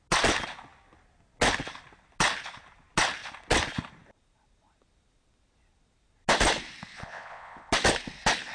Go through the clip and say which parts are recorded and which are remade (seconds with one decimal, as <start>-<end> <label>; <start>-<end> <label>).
0.0-6.9 recorded; 6.9-7.7 remade; 7.7-8.5 recorded